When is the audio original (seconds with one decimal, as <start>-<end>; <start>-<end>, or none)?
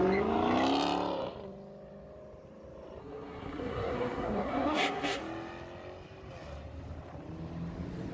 0.0-3.0; 5.2-8.1